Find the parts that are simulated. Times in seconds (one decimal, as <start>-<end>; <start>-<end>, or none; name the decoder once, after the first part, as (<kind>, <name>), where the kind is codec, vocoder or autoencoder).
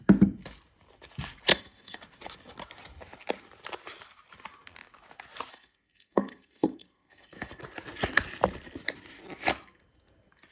1.5-2.0 (codec, SNAC); 5.5-7.6